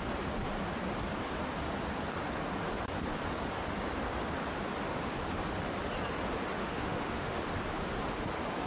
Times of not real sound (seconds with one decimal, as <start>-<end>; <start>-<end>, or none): 6.6-7.4